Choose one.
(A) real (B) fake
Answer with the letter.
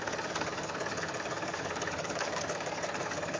B